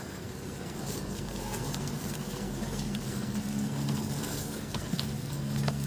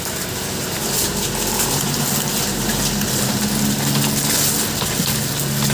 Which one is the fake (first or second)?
first